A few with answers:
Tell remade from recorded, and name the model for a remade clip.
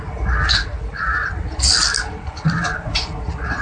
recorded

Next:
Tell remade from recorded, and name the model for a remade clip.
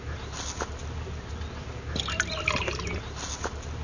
recorded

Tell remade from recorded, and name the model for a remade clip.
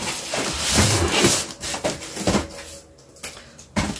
recorded